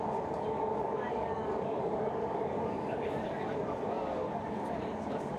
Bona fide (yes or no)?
no